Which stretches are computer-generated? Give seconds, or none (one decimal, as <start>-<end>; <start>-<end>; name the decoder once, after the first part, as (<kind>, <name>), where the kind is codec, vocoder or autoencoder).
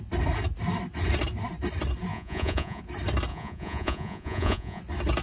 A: 2.1-2.8 (vocoder, Vocos); 3.3-4.8